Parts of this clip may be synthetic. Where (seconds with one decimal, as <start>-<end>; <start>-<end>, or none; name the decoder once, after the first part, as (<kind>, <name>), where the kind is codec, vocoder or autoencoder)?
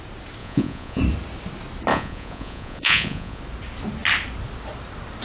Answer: 0.4-1.0 (vocoder, Vocos); 1.9-3.4